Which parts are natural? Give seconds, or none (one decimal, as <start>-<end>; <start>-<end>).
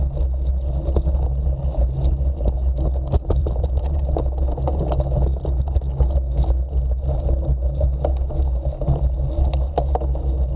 0.0-3.4; 4.2-10.6